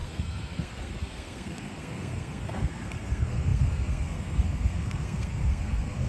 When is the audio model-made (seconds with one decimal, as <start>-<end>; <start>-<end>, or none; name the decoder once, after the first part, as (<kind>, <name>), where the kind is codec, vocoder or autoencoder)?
0.0-6.1 (codec, SNAC)